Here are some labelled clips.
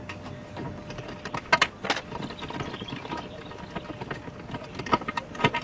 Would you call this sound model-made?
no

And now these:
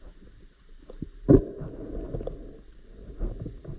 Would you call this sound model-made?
no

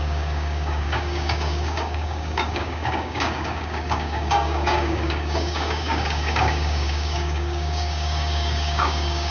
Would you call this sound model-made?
yes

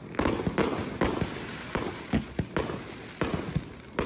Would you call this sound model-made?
no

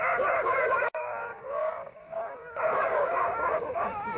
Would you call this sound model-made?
yes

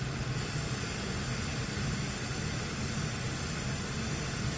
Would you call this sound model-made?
no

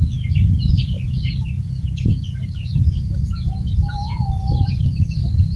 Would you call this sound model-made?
yes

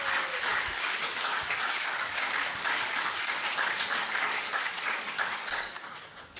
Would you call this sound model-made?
yes